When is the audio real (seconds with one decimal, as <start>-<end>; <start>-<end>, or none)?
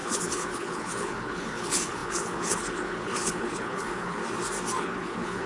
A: 4.2-4.8